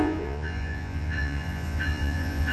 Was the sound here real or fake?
fake